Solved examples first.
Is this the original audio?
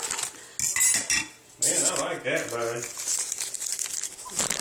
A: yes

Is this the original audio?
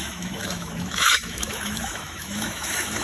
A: no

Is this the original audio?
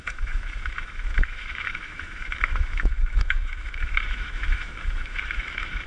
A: no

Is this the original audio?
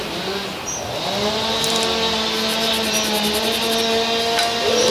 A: yes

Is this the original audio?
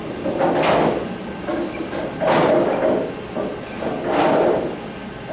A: yes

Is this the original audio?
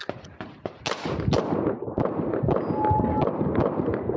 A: yes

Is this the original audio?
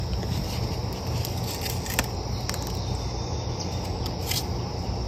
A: yes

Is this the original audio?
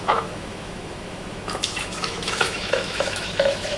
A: no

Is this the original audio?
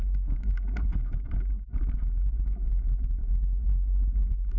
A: no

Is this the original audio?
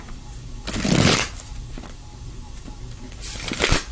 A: yes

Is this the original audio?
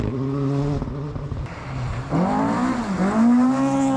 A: yes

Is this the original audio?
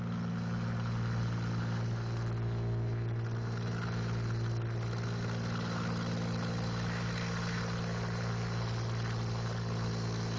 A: yes